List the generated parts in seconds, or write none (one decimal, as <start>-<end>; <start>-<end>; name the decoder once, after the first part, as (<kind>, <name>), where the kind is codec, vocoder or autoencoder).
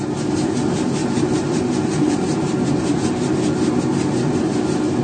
1.0-3.0 (vocoder, BigVGAN v2)